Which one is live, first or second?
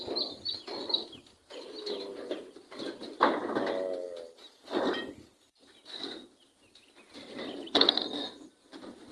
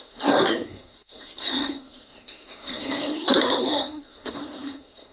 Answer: first